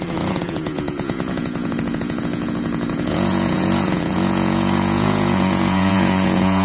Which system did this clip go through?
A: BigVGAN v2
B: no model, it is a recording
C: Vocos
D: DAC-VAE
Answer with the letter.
C